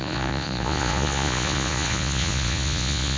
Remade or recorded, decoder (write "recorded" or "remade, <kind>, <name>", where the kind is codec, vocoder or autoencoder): remade, vocoder, Vocos